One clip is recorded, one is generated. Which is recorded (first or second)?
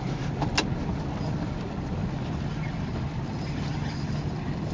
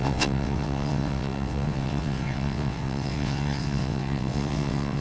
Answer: first